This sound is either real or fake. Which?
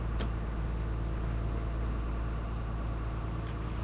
real